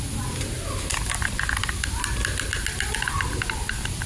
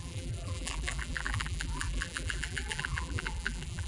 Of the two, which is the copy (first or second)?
second